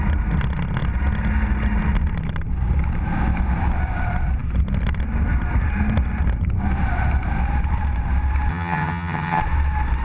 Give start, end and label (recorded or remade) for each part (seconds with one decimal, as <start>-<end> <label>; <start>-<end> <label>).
0.0-8.5 recorded; 8.5-9.4 remade; 9.4-10.0 recorded